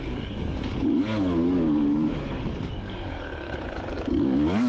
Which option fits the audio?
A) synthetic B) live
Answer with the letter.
A